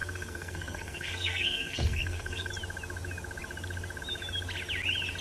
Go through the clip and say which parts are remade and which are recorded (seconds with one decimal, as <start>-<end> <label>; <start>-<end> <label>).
0.0-2.5 remade; 2.5-5.2 recorded